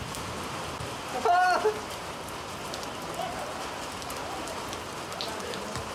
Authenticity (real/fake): real